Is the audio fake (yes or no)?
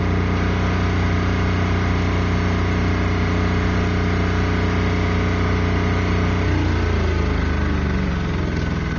no